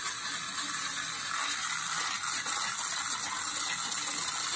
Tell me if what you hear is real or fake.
real